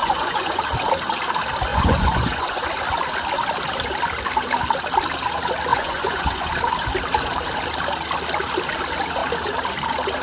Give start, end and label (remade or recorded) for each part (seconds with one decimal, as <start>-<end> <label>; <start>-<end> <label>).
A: 0.0-0.6 remade; 0.6-1.7 recorded; 1.7-2.7 remade; 2.7-5.7 recorded; 5.7-6.5 remade; 6.5-10.2 recorded